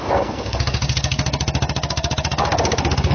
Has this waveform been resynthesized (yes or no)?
yes